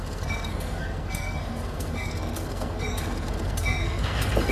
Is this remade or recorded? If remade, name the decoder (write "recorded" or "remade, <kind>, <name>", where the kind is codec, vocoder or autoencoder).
remade, codec, SNAC